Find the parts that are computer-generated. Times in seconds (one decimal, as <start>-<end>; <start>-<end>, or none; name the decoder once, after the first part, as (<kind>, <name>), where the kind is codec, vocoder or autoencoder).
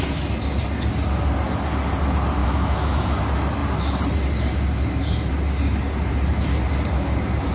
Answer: 2.4-3.1 (autoencoder, DAC-VAE)